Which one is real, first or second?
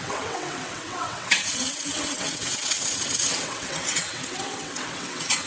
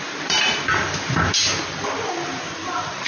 second